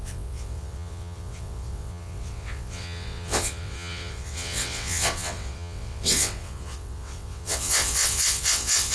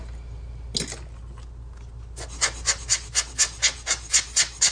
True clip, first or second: second